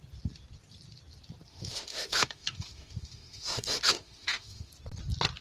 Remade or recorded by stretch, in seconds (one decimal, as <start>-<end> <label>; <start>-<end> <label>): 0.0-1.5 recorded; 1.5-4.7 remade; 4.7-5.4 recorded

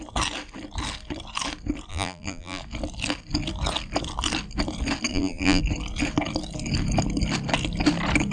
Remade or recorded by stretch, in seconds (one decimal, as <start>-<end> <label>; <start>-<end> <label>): 0.0-1.9 recorded; 1.9-2.6 remade; 2.6-5.1 recorded; 5.1-5.6 remade; 5.6-8.3 recorded

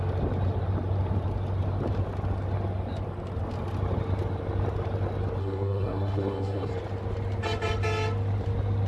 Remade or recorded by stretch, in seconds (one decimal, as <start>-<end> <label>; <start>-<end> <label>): 0.0-5.4 recorded; 5.4-6.7 remade; 6.7-8.9 recorded

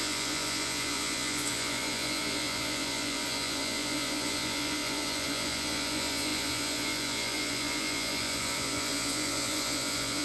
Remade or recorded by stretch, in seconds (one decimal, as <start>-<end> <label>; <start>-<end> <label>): 0.0-10.2 remade

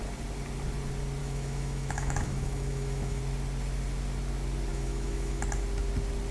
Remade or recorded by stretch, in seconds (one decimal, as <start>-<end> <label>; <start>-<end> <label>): 0.0-1.2 recorded; 1.2-3.2 remade; 3.2-4.7 recorded; 4.7-5.4 remade; 5.4-6.3 recorded